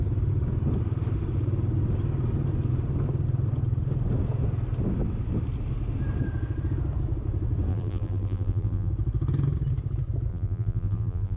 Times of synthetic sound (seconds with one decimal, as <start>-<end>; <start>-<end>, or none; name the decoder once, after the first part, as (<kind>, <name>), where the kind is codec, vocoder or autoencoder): 7.7-8.9 (vocoder, BigVGAN v2); 10.3-11.4